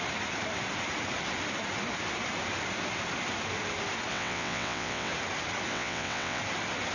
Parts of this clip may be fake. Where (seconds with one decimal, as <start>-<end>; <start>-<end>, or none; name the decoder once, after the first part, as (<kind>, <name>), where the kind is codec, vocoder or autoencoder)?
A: 4.1-5.1 (vocoder, WaveNeXt); 5.7-6.4